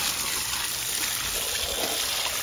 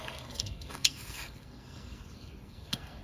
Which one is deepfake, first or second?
second